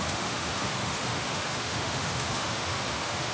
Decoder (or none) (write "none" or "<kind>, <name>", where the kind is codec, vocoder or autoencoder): autoencoder, DAC-VAE